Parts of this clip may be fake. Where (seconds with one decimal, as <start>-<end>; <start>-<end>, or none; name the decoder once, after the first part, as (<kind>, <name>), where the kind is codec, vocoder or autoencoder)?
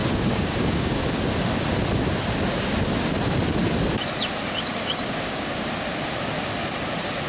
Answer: 0.0-1.0 (codec, DAC); 4.7-5.6